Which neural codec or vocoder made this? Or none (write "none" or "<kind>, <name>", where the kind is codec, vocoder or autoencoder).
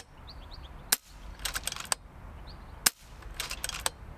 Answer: none